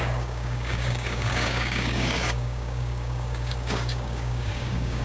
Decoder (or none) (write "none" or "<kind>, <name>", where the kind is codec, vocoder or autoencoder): codec, DAC